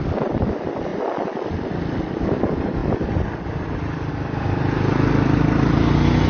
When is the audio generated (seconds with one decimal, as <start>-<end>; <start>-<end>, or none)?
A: none